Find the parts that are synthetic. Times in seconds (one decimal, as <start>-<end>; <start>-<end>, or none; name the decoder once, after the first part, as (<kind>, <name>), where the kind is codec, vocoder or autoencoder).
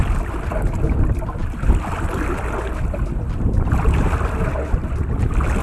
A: none